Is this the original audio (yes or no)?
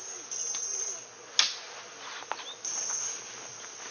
yes